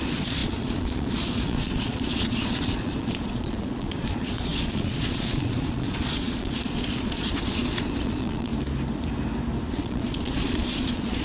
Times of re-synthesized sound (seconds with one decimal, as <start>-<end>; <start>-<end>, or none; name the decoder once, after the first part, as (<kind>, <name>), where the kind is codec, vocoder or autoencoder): 0.0-8.5 (vocoder, Vocos); 9.7-11.2